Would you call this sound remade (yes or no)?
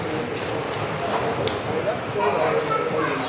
no